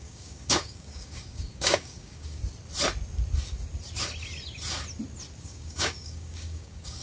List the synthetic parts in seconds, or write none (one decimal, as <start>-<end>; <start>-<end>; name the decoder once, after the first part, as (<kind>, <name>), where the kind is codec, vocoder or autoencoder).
0.0-2.4 (codec, DAC); 5.4-7.0